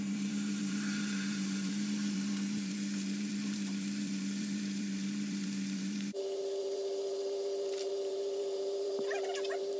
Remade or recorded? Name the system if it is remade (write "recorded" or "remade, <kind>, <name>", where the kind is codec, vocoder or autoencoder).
remade, vocoder, BigVGAN v2